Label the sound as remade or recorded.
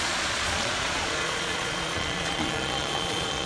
remade